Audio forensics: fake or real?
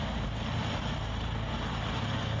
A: fake